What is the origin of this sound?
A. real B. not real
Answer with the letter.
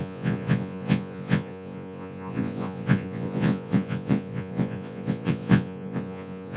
B